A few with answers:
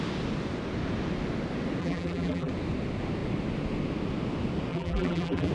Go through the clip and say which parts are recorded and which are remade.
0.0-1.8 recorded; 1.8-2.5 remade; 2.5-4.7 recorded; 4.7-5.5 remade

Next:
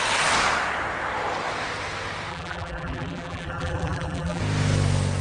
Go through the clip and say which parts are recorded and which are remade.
0.0-2.3 recorded; 2.3-4.4 remade; 4.4-5.2 recorded

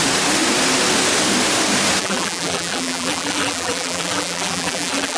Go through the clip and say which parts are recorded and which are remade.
0.0-2.0 recorded; 2.0-5.2 remade

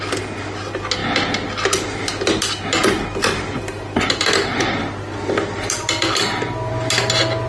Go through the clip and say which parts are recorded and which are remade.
0.0-4.5 recorded; 4.5-6.7 remade; 6.7-7.5 recorded

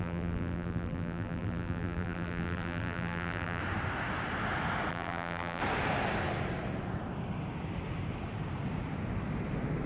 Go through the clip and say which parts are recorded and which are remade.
0.0-3.6 remade; 3.6-4.9 recorded; 4.9-5.6 remade; 5.6-9.9 recorded

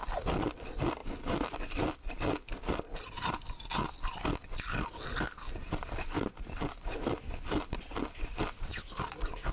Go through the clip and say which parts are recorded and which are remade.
0.0-9.5 recorded

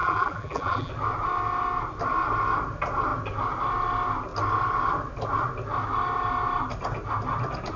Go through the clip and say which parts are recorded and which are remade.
0.0-0.9 remade; 0.9-7.8 recorded